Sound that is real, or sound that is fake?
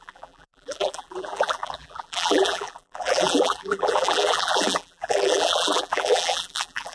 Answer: fake